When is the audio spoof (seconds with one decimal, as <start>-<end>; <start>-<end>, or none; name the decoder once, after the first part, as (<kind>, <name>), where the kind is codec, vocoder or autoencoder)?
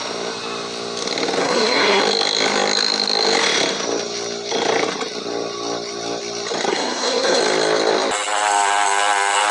1.4-2.0 (codec, SNAC); 6.7-7.4